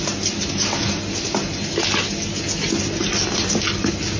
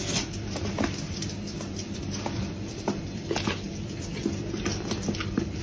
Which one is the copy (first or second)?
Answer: second